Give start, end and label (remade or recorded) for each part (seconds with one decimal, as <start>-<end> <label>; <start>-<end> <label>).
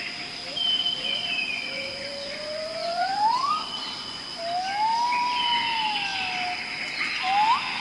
0.0-1.0 recorded; 1.0-4.4 remade; 4.4-7.8 recorded